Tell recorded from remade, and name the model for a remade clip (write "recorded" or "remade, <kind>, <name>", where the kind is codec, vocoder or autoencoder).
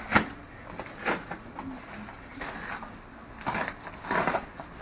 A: recorded